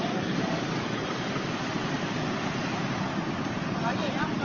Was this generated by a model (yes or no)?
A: yes